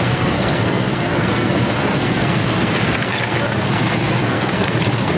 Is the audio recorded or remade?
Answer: remade